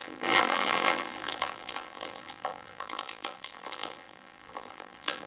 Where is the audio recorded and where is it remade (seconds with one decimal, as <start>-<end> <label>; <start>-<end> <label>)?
0.0-5.3 remade